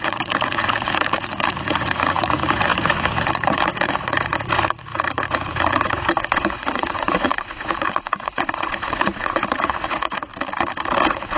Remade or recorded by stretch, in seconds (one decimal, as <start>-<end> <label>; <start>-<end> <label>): 0.0-10.3 remade; 10.3-11.0 recorded; 11.0-11.4 remade